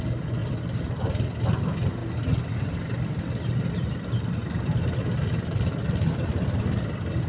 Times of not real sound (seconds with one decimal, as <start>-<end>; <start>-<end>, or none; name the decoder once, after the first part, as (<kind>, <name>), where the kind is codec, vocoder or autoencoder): 0.4-1.0 (vocoder, BigVGAN v2); 2.0-3.2